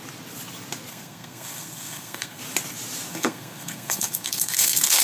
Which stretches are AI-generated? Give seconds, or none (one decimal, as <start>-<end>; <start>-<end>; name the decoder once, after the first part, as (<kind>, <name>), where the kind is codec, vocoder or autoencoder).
0.9-2.4 (codec, SNAC); 3.1-5.0